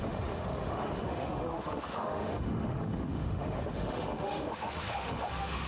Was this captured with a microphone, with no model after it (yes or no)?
no